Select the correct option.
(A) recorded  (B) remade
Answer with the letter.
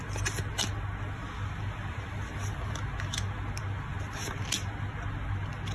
A